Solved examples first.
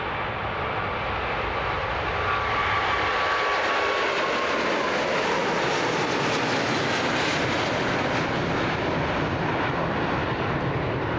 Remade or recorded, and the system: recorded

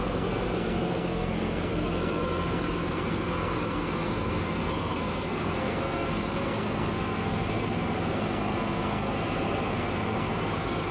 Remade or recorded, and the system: remade, codec, SNAC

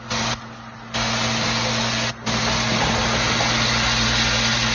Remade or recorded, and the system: recorded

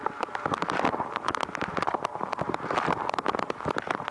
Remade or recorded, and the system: recorded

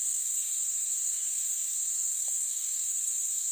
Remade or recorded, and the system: remade, codec, SNAC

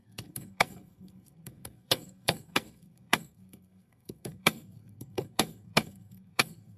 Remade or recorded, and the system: remade, codec, SNAC